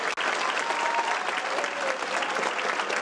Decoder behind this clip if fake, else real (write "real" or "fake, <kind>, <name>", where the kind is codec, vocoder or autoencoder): real